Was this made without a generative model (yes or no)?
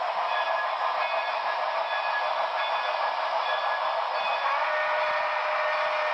yes